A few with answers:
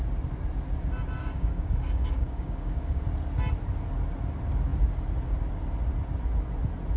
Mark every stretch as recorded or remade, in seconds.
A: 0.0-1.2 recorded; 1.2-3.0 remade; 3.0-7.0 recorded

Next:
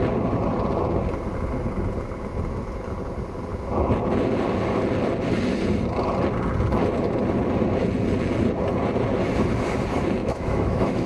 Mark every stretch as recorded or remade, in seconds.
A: 0.0-10.2 recorded; 10.2-11.1 remade

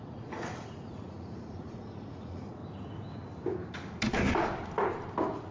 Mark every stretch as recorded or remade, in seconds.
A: 0.0-2.6 remade; 2.6-5.5 recorded

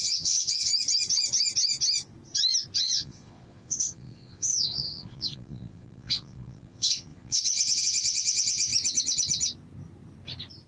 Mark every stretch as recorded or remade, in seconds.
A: 0.0-0.7 remade; 0.7-2.8 recorded; 2.8-8.7 remade; 8.7-10.7 recorded

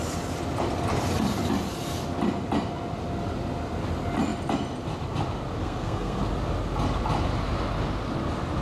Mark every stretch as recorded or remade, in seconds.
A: 0.0-5.6 recorded; 5.6-6.3 remade; 6.3-8.6 recorded

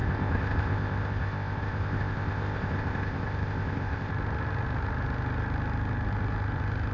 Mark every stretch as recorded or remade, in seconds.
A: 0.0-4.1 remade; 4.1-6.9 recorded

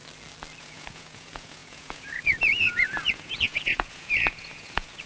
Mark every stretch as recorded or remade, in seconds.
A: 0.0-0.6 recorded; 0.6-5.1 remade